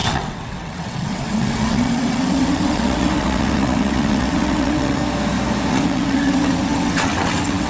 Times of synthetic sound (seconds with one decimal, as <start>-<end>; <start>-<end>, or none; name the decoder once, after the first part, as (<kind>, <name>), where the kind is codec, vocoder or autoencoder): 0.0-5.0 (vocoder, WaveNeXt); 5.7-7.7